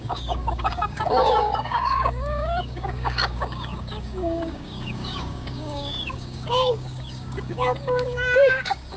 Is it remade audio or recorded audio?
remade